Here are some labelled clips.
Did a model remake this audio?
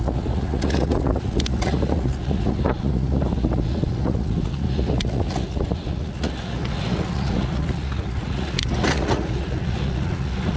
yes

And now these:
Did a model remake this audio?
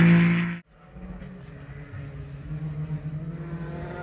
no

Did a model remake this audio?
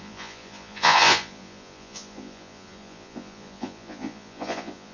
yes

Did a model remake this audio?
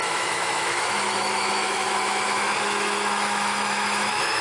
yes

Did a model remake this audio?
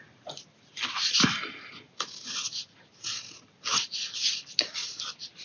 no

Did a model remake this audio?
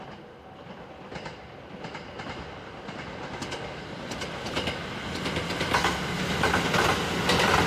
no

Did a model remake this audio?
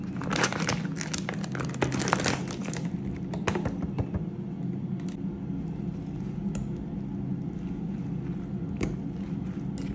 no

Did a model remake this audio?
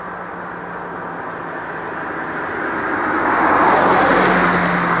no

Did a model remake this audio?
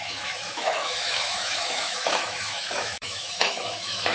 yes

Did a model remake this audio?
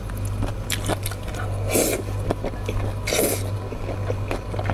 no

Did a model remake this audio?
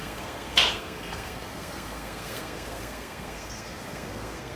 yes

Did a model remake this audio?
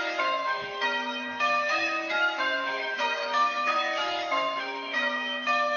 yes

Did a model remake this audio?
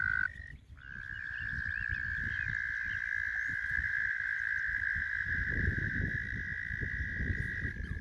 no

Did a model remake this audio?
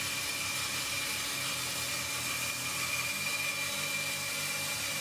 no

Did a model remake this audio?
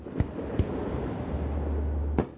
no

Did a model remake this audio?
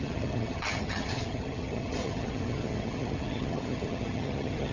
yes